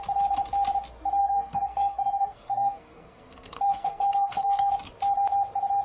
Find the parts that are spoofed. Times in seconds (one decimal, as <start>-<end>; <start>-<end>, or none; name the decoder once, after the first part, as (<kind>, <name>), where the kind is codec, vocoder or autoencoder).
1.2-4.7 (codec, SNAC)